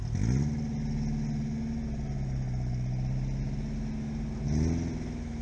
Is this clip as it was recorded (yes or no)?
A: yes